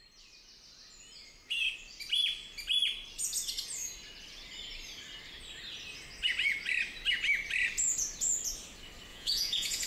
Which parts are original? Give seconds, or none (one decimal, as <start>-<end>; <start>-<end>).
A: 0.0-9.1